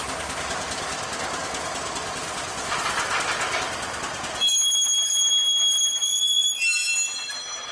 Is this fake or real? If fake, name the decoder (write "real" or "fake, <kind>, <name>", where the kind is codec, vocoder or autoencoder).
real